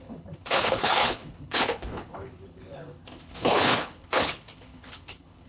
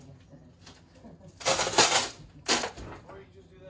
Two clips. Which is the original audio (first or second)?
second